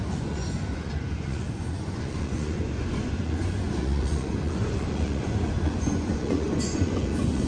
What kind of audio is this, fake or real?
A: fake